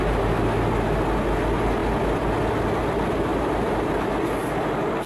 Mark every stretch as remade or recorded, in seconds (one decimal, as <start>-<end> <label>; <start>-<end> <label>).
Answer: 0.0-3.3 recorded; 3.3-4.1 remade; 4.1-5.1 recorded